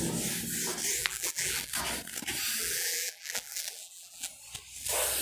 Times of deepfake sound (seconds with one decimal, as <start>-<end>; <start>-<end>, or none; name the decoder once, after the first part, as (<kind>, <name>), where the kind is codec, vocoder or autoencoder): 1.0-1.7 (vocoder, BigVGAN v2); 2.6-4.3